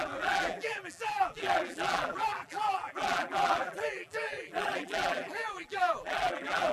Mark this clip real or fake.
fake